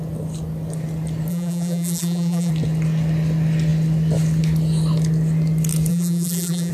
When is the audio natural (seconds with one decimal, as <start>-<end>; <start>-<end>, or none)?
0.0-1.3; 2.5-5.9